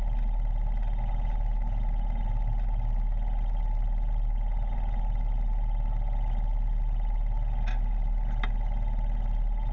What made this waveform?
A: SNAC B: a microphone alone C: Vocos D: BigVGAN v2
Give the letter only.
B